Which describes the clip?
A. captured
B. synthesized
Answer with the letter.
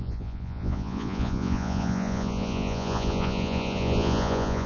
B